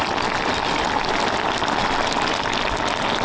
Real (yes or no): yes